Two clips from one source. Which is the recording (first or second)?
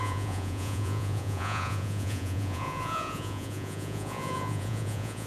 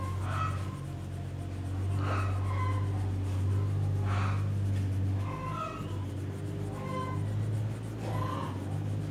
second